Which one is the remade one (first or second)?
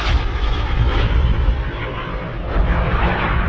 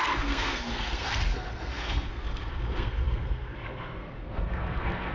second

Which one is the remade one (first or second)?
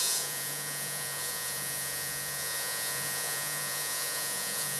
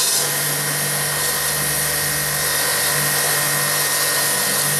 first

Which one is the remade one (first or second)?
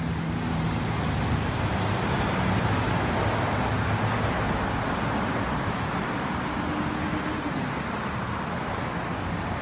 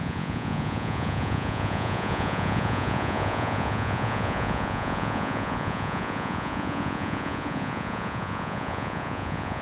second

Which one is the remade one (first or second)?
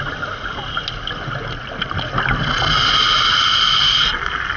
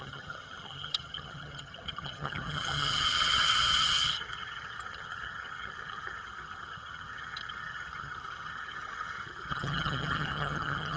second